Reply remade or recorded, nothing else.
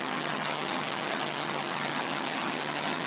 remade